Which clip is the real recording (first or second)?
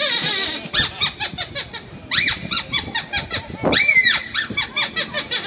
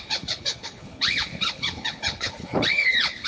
first